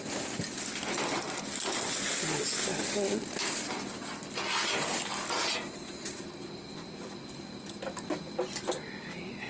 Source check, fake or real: real